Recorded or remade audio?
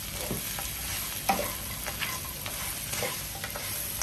recorded